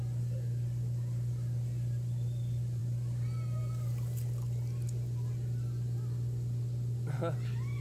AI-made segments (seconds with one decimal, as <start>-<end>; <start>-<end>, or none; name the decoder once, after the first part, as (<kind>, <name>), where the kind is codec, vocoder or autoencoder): none